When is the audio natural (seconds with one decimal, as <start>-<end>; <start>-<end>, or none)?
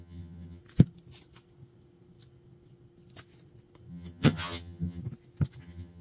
0.6-3.9; 5.0-5.6